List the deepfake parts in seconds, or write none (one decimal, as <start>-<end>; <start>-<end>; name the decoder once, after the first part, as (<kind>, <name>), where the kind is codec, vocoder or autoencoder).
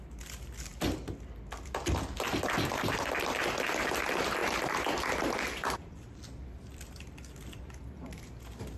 4.4-8.3 (vocoder, BigVGAN v2)